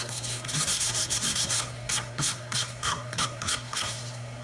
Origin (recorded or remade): remade